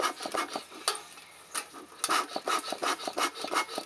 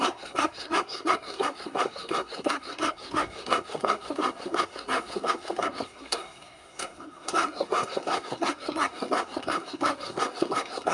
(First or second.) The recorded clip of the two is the first